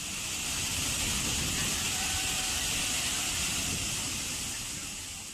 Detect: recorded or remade recorded